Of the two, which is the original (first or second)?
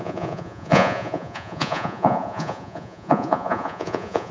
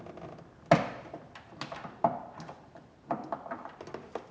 second